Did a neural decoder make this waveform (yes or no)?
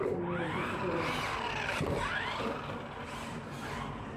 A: no